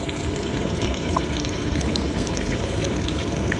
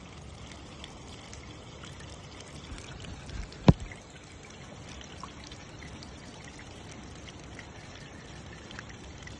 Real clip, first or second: second